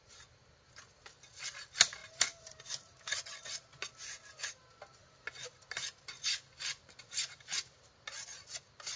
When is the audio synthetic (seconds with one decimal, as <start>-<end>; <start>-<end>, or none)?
none